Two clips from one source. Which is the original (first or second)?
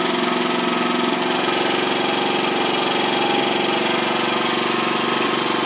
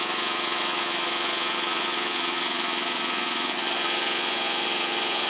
first